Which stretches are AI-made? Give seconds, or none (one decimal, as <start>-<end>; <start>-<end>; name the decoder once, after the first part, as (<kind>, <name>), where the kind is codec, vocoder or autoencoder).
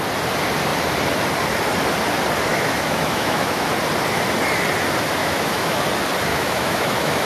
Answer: 2.5-3.7 (autoencoder, DAC-VAE); 5.2-5.8; 6.3-7.3